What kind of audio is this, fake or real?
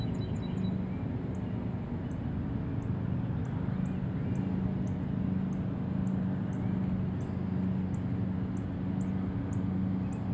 real